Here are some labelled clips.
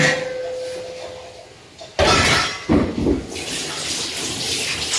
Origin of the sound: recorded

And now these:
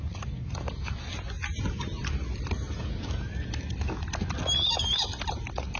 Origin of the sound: recorded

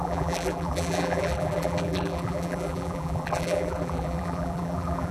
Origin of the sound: remade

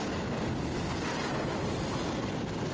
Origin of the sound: recorded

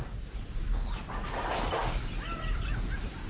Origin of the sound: recorded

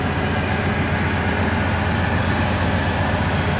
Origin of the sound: recorded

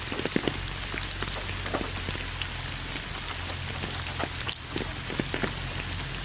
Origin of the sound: recorded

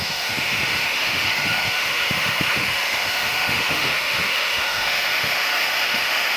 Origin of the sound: remade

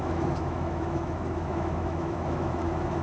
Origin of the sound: remade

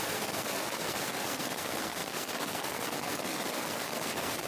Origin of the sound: remade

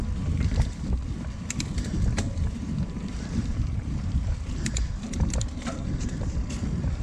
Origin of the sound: remade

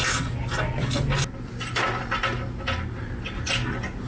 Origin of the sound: recorded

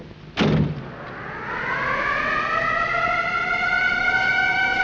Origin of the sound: recorded